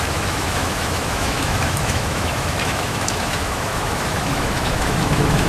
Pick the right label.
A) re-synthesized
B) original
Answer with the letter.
A